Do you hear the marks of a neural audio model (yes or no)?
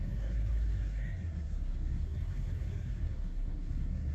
yes